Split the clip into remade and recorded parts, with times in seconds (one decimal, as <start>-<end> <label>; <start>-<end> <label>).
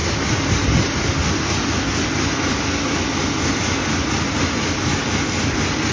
0.0-5.9 recorded